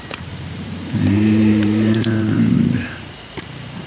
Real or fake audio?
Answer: fake